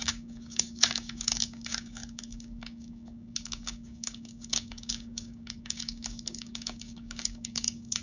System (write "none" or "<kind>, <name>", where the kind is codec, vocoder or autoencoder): codec, DAC